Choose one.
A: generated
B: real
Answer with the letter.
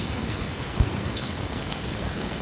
A